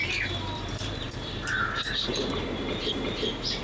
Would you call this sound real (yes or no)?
no